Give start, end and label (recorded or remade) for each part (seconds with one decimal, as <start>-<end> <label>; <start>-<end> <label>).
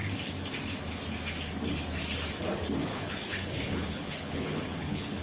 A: 0.0-2.9 recorded; 2.9-5.2 remade